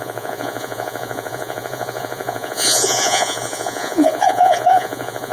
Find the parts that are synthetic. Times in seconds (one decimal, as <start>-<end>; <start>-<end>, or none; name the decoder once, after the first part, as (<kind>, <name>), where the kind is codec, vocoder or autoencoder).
0.0-5.3 (vocoder, Vocos)

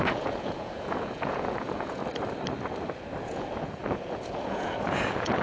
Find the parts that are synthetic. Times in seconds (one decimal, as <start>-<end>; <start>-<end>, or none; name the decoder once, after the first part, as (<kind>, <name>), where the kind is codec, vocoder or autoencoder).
0.0-2.0 (vocoder, Vocos); 3.2-5.4

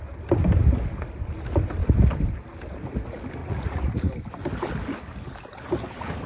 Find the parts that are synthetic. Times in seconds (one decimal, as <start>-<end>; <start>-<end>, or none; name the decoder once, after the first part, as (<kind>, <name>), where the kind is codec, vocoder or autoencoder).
3.4-4.1 (vocoder, Vocos)

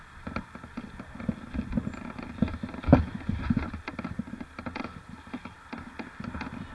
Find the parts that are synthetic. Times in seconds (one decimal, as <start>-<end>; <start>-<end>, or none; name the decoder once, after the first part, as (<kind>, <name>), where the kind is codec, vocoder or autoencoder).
none

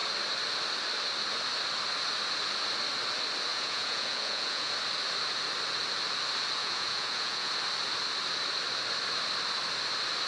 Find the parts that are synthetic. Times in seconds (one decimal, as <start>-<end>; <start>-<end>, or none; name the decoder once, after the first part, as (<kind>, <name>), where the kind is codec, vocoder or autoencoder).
3.5-4.7 (vocoder, Vocos); 6.6-7.5

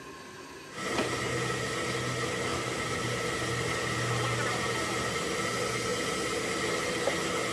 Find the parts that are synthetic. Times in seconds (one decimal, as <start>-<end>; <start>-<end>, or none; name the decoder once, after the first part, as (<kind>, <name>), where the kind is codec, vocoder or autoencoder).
none

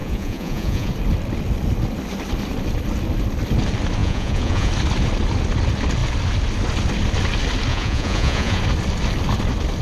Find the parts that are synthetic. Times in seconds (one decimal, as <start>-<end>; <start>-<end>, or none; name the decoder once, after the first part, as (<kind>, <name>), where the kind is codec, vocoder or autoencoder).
0.0-0.9 (vocoder, Vocos); 4.0-4.7; 7.7-8.6